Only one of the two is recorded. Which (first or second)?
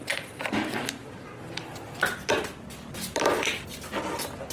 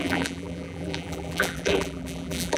first